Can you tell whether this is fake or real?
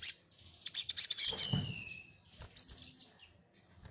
real